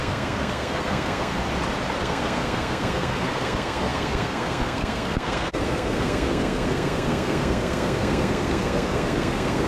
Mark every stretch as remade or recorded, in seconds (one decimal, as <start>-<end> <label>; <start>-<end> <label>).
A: 0.0-1.4 remade; 1.4-2.0 recorded; 2.0-9.7 remade